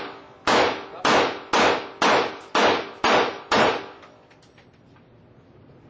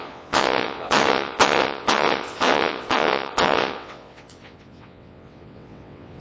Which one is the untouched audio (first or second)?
first